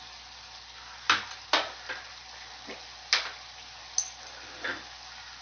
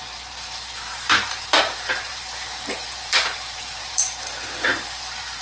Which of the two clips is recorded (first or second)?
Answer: first